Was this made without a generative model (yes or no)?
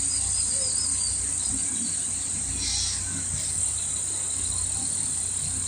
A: yes